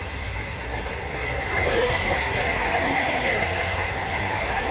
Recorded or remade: remade